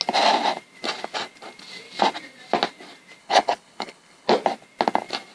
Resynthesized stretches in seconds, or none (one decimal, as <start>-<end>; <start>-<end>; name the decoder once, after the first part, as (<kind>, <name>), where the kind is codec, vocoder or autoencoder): 3.2-4.3 (codec, HILCodec)

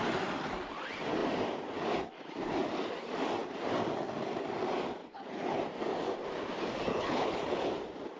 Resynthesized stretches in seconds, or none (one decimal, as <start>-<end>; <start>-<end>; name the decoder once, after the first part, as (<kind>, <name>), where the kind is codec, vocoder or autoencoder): 5.0-5.6 (codec, HILCodec); 6.9-7.7

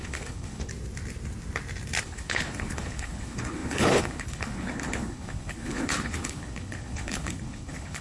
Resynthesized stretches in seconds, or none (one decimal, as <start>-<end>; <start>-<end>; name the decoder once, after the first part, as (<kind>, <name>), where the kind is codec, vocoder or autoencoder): 0.0-0.7 (codec, HILCodec); 2.0-8.0

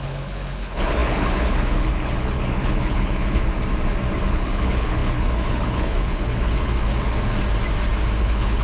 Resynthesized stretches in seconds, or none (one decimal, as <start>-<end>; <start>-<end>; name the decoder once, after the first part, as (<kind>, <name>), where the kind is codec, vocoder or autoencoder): 0.0-3.5 (codec, HILCodec); 4.2-6.9; 8.2-8.6

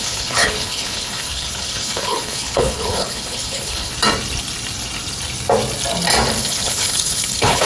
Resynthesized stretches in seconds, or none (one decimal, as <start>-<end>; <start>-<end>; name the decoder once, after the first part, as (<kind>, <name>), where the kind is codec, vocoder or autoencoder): 0.0-3.9 (codec, HILCodec); 6.4-7.7